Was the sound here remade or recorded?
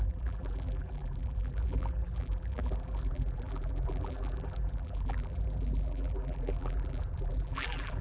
remade